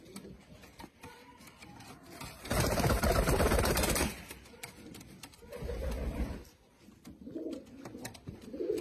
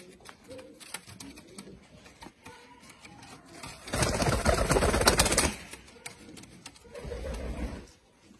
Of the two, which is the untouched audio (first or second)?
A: second